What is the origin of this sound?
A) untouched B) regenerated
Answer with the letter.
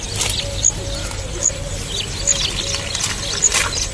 A